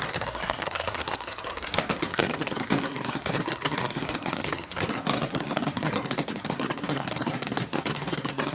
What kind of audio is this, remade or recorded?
remade